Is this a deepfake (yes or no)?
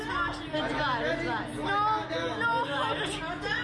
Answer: no